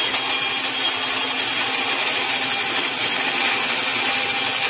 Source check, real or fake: real